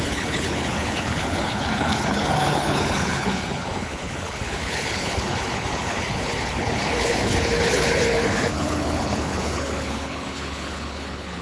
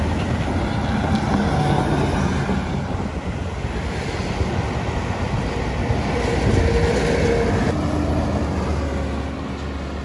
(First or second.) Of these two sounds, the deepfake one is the first